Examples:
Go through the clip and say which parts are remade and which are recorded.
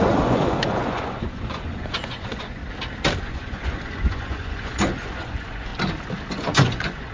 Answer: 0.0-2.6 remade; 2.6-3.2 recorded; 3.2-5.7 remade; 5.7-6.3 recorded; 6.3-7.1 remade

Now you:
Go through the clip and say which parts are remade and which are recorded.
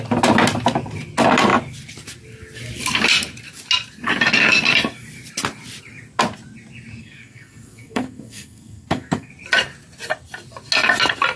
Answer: 0.0-7.0 recorded; 7.0-9.3 remade; 9.3-11.4 recorded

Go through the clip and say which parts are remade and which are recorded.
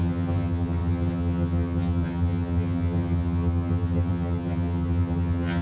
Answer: 0.0-5.6 remade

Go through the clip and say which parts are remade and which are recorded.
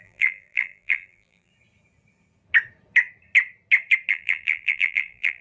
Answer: 0.0-1.5 remade; 1.5-4.1 recorded; 4.1-5.4 remade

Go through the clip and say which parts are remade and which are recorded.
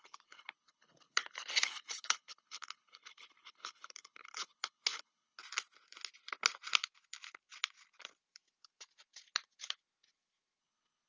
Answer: 0.0-5.4 remade; 5.4-10.6 recorded; 10.6-11.1 remade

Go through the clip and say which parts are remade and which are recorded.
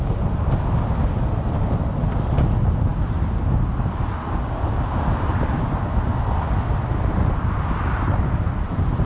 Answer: 0.0-9.1 recorded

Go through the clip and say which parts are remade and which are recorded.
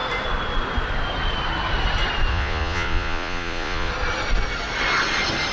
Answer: 0.0-2.3 recorded; 2.3-3.9 remade; 3.9-5.5 recorded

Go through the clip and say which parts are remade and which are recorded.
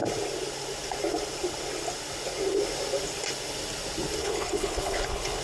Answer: 0.0-4.2 recorded; 4.2-5.4 remade